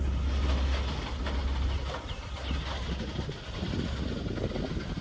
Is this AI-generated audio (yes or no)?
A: no